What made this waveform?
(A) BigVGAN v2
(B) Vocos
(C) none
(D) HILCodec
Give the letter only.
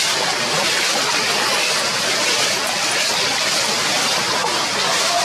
C